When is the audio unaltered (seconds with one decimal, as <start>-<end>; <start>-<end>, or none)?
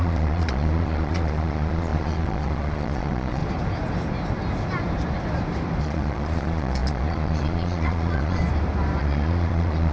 3.4-5.8; 8.4-9.0